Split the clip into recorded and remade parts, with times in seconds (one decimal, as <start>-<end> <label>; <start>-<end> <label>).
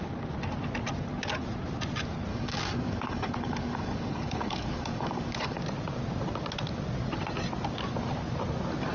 0.0-2.3 recorded; 2.3-5.6 remade; 5.6-8.9 recorded